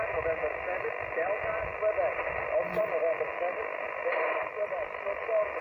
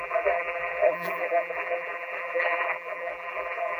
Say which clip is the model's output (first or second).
second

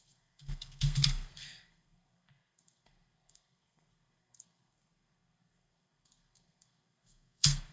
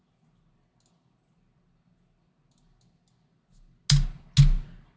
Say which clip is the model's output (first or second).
first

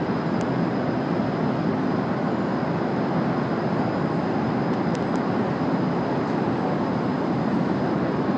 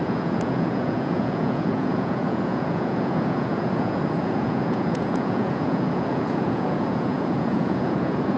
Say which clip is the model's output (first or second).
second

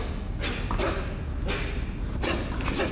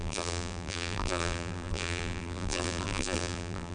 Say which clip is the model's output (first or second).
second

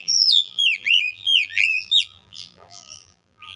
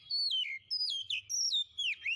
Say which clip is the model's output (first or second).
first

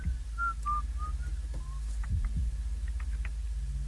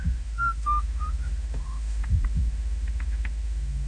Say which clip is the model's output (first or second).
second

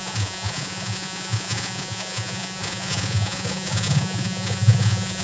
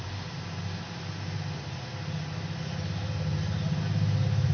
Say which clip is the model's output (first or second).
first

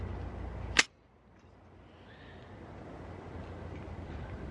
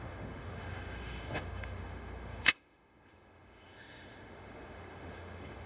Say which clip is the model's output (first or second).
second